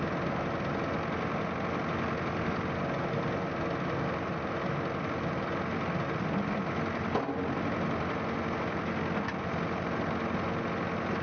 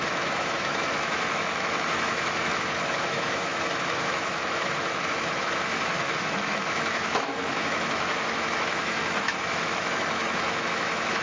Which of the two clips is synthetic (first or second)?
second